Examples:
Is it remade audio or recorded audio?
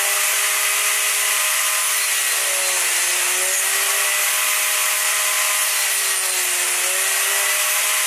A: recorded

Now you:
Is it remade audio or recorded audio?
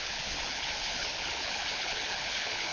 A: remade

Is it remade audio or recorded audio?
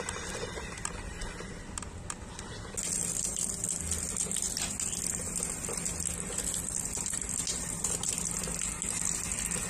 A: recorded